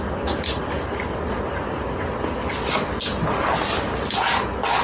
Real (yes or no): yes